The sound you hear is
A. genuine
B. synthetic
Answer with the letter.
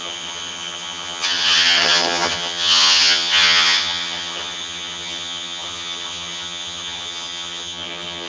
B